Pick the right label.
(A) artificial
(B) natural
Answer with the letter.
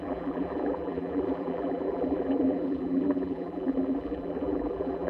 A